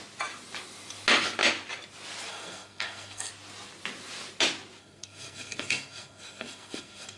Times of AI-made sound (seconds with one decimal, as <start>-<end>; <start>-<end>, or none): 2.3-3.3; 4.8-7.2